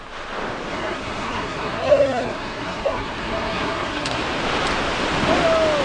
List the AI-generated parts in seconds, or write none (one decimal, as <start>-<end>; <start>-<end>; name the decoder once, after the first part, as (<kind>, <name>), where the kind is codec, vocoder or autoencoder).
0.7-4.2 (codec, SNAC)